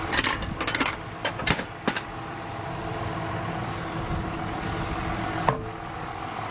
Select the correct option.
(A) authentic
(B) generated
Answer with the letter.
B